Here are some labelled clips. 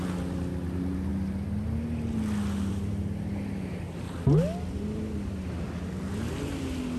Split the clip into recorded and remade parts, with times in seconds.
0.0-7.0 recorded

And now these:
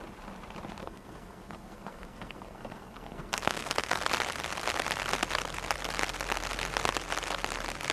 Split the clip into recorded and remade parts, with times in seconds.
0.0-0.8 recorded; 0.8-4.0 remade; 4.0-7.9 recorded

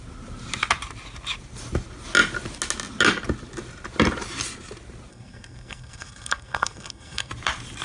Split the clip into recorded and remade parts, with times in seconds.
0.0-5.1 recorded; 5.1-7.3 remade; 7.3-7.8 recorded

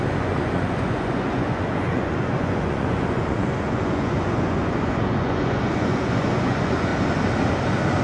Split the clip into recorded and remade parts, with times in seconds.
0.0-6.9 remade; 6.9-8.0 recorded

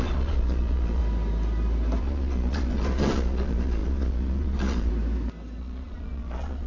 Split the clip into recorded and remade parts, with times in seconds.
0.0-1.0 remade; 1.0-2.0 recorded; 2.0-4.9 remade; 4.9-5.6 recorded; 5.6-6.7 remade